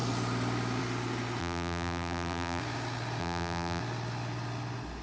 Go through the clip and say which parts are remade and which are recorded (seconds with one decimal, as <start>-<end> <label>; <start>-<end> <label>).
0.0-1.4 recorded; 1.4-2.6 remade; 2.6-3.2 recorded; 3.2-3.8 remade; 3.8-5.0 recorded